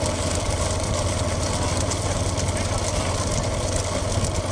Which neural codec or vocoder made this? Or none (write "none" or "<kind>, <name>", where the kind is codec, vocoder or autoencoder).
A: none